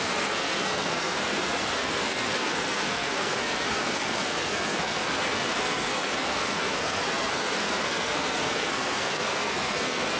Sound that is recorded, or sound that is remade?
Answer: remade